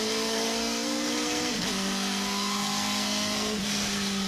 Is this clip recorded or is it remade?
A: remade